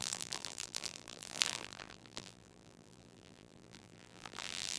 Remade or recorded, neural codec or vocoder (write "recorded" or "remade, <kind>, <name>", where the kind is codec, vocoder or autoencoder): remade, vocoder, BigVGAN v2